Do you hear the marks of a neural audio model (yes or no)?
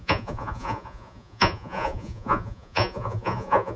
yes